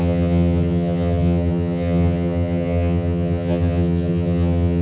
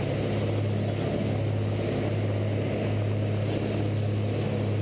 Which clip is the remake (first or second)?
first